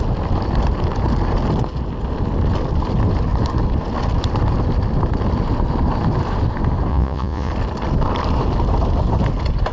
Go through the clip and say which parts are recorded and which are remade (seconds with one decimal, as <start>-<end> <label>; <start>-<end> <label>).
0.0-6.9 recorded; 6.9-7.5 remade; 7.5-9.7 recorded